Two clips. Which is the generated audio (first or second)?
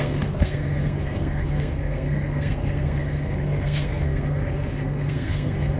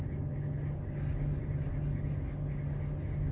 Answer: first